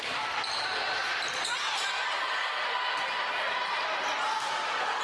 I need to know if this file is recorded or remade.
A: recorded